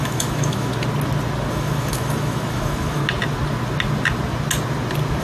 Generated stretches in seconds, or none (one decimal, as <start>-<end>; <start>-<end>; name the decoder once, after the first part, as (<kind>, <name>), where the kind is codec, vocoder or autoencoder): 0.0-0.7 (autoencoder, DAC-VAE); 1.5-3.0